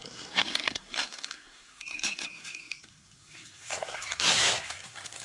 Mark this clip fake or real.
fake